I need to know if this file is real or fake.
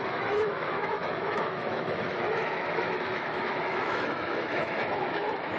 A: fake